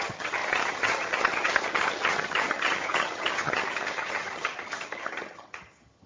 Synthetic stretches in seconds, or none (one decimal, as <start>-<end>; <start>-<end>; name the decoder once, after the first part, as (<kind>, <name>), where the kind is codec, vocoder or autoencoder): 0.0-6.1 (vocoder, HiFi-GAN)